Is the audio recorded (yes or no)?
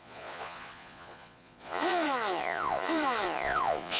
no